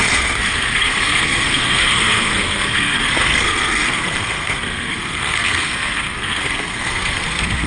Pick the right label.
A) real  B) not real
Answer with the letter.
B